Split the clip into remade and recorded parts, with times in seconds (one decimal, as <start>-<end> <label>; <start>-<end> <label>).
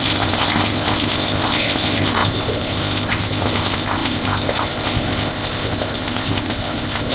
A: 0.0-7.1 remade